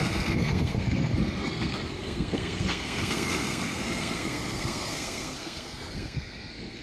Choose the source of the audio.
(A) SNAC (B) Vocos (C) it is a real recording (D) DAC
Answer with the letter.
A